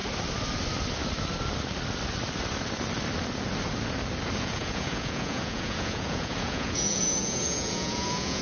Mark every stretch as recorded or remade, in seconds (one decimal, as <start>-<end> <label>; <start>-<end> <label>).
0.0-4.4 recorded; 4.4-8.4 remade